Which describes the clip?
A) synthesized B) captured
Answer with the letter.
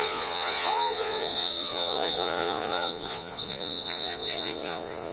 A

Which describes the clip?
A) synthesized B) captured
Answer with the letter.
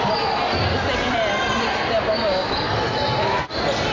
B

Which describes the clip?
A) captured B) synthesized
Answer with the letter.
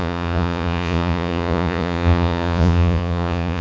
B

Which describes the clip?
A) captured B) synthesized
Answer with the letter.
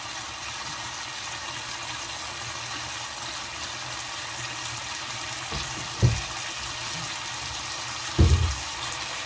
A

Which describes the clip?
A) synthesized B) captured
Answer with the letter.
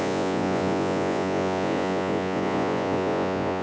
A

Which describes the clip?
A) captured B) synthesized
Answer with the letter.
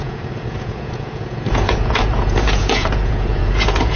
B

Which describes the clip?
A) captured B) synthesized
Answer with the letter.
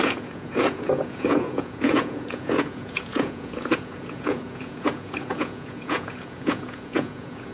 B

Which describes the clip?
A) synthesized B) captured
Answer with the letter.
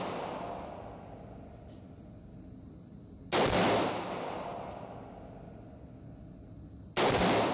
B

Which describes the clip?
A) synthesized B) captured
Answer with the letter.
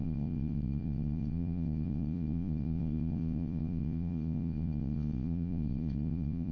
A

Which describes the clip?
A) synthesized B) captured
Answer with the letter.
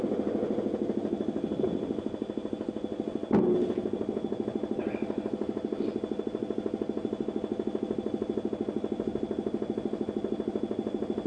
B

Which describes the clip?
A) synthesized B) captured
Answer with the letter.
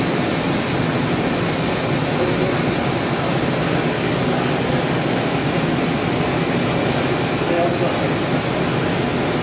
B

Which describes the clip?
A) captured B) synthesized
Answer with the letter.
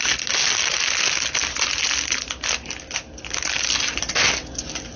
A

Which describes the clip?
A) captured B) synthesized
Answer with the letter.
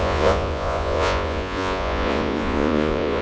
B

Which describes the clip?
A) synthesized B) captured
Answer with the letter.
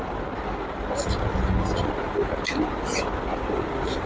B